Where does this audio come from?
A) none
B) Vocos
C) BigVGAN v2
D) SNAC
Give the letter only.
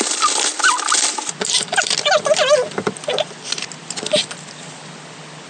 A